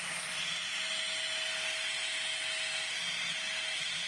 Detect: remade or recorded recorded